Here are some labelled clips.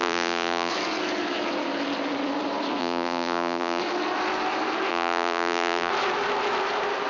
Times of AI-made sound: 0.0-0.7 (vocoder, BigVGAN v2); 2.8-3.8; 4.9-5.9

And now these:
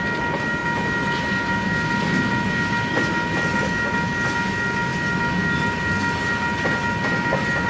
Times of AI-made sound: none

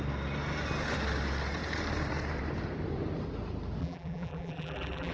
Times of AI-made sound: 3.8-5.1 (vocoder, BigVGAN v2)

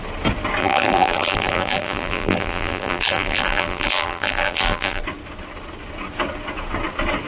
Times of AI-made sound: 0.6-5.0 (vocoder, BigVGAN v2)

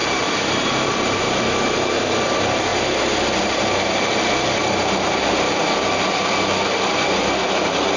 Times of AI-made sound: 0.0-5.6 (vocoder, BigVGAN v2)

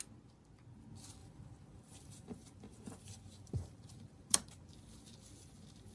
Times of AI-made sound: 1.2-4.7 (vocoder, BigVGAN v2)